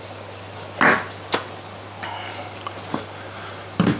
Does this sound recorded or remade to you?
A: recorded